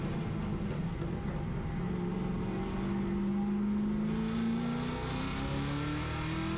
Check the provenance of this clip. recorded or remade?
recorded